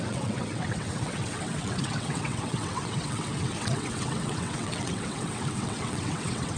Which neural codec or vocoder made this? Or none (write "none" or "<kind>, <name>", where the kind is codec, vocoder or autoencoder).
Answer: vocoder, WaveNeXt